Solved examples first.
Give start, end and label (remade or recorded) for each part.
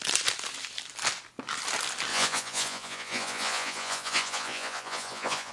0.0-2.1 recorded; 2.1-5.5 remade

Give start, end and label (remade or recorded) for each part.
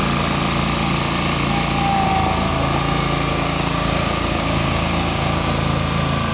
0.0-3.3 recorded; 3.3-5.5 remade; 5.5-6.3 recorded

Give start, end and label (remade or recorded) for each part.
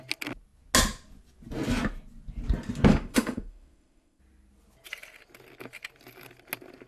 0.0-2.9 recorded; 2.9-4.2 remade; 4.2-6.9 recorded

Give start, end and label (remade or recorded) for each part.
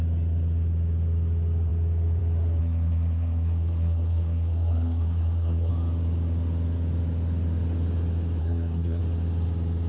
0.0-2.6 recorded; 2.6-5.7 remade; 5.7-8.4 recorded; 8.4-9.0 remade; 9.0-9.9 recorded